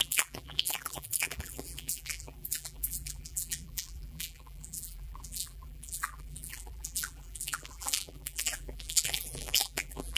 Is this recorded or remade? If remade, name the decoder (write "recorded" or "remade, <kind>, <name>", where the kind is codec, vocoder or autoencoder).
remade, vocoder, BigVGAN v2